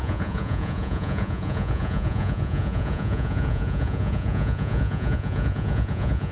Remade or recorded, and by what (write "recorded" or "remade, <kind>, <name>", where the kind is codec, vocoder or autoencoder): remade, vocoder, Vocos